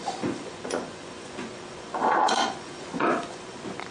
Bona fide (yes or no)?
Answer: no